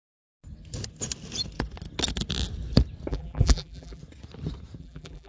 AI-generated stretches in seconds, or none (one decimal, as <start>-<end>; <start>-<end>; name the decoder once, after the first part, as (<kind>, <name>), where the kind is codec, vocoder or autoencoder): 3.1-4.0 (vocoder, BigVGAN v2); 4.8-5.3